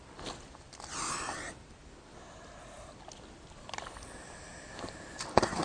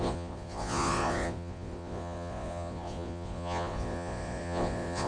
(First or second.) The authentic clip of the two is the first